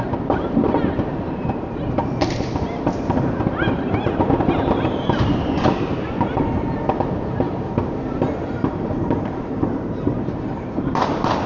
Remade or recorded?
remade